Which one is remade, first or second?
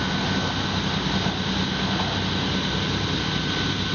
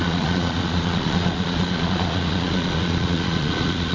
second